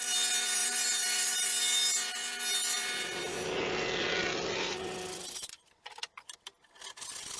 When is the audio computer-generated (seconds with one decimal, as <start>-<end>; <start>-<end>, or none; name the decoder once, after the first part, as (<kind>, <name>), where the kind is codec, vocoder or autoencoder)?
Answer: none